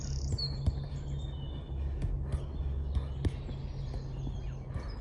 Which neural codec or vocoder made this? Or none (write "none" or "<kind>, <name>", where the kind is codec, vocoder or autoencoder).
none